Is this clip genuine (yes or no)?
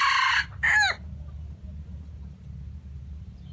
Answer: yes